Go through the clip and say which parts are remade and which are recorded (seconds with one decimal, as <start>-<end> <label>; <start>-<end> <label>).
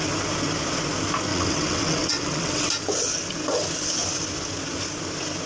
0.0-1.3 recorded; 1.3-2.7 remade; 2.7-5.5 recorded